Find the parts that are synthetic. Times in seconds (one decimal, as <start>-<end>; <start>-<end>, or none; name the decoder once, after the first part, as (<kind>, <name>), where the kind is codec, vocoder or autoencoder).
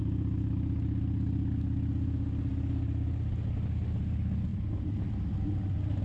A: none